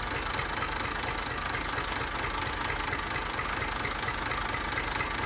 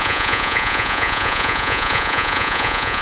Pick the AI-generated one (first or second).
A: second